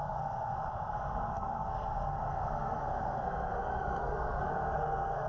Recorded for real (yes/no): no